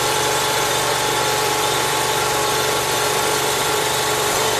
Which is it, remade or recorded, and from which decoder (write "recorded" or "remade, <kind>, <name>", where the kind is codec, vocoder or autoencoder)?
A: remade, vocoder, BigVGAN v2